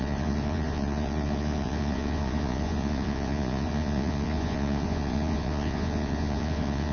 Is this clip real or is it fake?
fake